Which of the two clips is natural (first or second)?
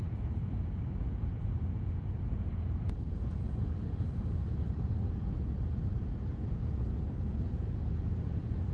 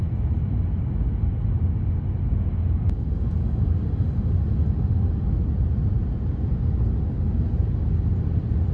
second